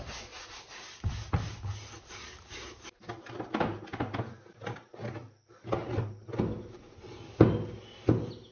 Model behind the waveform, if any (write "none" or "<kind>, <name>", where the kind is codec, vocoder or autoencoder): none